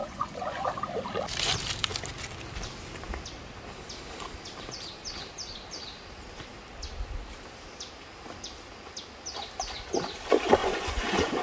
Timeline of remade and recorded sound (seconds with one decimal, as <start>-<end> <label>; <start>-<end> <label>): 0.0-0.7 remade; 0.7-10.6 recorded; 10.6-11.4 remade